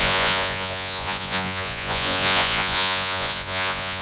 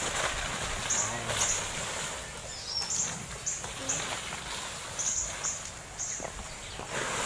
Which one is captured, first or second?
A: second